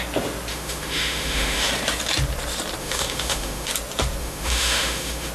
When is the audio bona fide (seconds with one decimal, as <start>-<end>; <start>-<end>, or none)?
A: 0.0-0.5; 1.7-2.8; 3.7-4.2